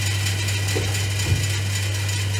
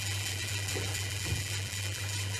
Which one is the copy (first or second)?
second